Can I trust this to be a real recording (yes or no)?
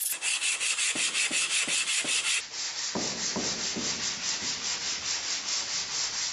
yes